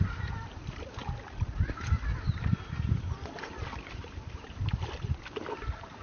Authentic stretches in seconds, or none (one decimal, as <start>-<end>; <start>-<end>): 0.0-6.0